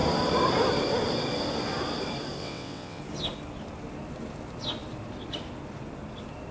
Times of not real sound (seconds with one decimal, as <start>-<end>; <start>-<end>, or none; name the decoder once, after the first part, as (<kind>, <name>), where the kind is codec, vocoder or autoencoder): 2.4-3.0 (vocoder, WaveNeXt)